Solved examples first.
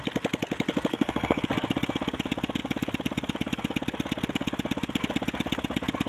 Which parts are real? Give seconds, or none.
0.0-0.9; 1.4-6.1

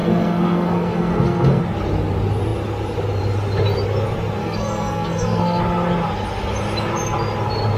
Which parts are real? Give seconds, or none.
1.6-4.4; 5.6-7.8

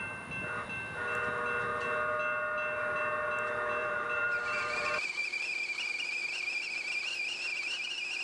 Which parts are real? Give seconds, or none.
0.0-3.8; 5.2-8.2

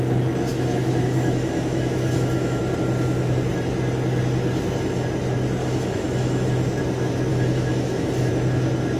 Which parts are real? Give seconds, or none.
0.0-0.5; 2.6-5.6; 6.5-7.3; 8.3-9.0

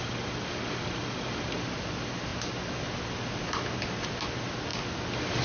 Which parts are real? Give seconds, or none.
0.0-5.4

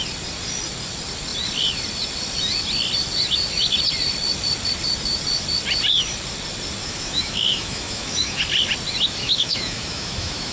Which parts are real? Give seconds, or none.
0.0-6.8; 8.4-9.2